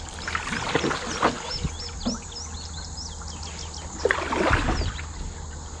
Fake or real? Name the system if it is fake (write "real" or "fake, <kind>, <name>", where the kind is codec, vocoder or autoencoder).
real